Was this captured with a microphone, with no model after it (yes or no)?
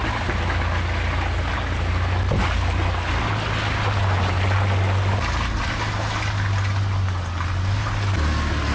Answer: yes